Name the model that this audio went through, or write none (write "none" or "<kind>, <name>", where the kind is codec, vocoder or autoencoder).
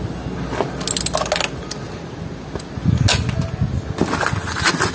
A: none